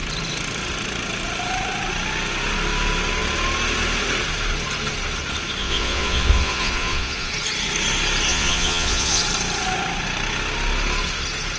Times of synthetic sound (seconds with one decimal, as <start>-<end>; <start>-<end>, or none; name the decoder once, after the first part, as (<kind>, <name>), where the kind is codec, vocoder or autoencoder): 5.6-7.3 (vocoder, Vocos); 8.3-9.2